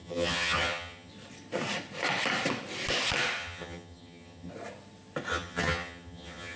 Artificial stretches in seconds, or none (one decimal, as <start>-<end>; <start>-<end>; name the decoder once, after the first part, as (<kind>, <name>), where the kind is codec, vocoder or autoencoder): 0.0-1.1 (vocoder, HiFi-GAN); 3.4-4.5; 5.3-6.6